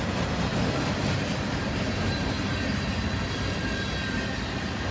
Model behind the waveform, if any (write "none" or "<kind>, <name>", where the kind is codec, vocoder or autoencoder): none